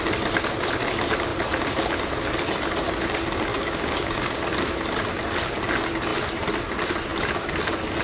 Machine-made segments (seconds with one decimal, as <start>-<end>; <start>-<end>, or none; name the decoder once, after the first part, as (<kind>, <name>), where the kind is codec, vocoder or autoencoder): 3.5-4.4 (codec, DAC)